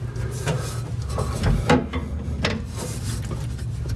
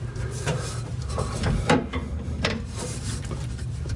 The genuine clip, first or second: first